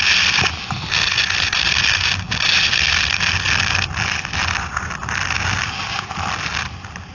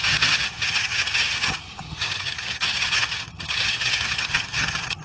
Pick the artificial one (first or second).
second